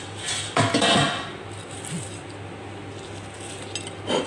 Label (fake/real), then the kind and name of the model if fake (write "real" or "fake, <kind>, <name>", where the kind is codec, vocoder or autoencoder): real